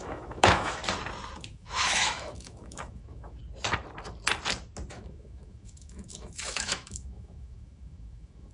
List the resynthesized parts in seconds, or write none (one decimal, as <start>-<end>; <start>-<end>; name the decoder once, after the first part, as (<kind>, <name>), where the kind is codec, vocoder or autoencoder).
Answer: 0.0-0.8 (autoencoder, DAC-VAE); 1.5-3.4; 4.9-8.5